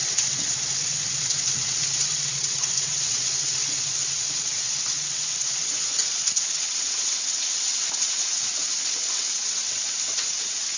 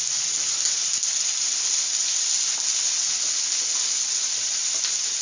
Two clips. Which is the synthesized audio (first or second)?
first